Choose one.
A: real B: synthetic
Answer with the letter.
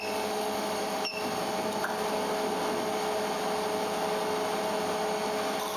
A